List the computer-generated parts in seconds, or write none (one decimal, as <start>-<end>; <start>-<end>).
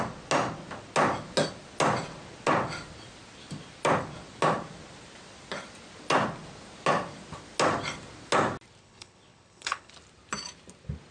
8.8-9.9